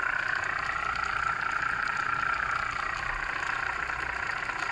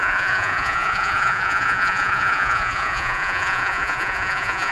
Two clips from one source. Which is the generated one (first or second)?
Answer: second